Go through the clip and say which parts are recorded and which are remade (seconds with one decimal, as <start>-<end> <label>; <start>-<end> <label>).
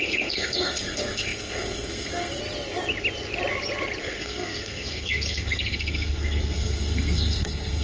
0.0-2.4 remade; 2.4-4.0 recorded; 4.0-7.8 remade